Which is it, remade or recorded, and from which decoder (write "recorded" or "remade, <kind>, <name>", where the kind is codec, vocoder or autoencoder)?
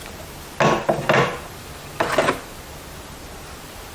recorded